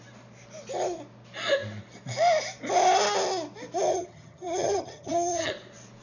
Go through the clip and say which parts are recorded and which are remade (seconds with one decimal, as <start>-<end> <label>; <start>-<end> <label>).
0.0-3.9 recorded; 3.9-5.5 remade; 5.5-6.0 recorded